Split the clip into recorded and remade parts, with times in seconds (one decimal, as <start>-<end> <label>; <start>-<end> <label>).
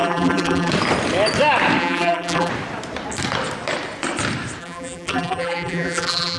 0.0-0.7 remade; 0.7-1.8 recorded; 1.8-2.5 remade; 2.5-4.6 recorded; 4.6-6.4 remade